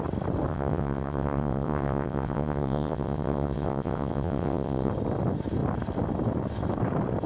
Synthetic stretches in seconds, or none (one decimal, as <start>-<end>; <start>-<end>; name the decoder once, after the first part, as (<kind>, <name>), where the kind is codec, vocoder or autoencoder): 0.5-4.9 (vocoder, WaveNeXt)